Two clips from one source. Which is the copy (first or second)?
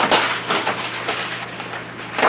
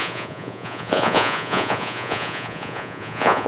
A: second